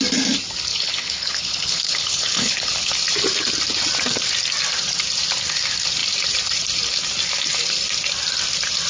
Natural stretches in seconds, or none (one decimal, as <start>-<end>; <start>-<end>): 0.0-0.7; 2.9-8.9